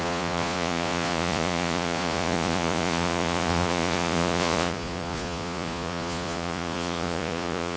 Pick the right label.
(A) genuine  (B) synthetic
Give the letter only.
B